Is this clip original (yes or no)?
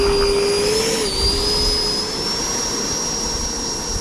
yes